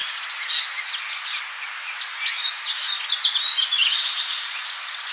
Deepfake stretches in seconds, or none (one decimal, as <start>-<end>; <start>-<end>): 3.8-5.1